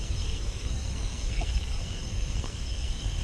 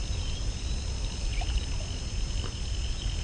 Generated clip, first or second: first